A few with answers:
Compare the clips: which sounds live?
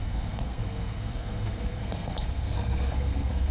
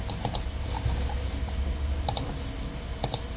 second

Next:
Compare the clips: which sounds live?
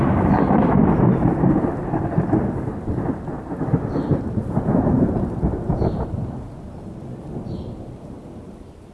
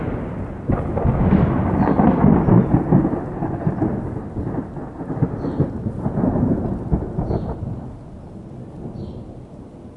second